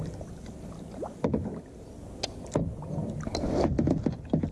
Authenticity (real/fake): real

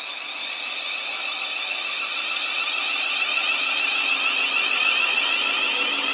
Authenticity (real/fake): real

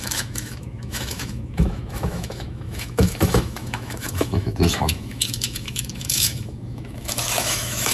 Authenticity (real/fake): fake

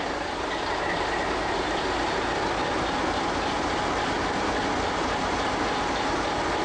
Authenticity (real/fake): real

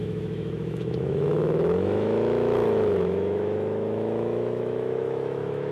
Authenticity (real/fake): fake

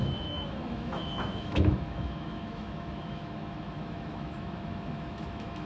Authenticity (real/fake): fake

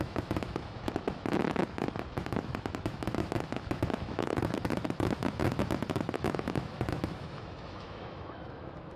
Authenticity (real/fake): fake